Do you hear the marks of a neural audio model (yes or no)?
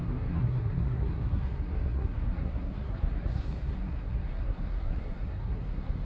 yes